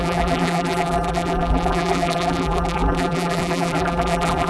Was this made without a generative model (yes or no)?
no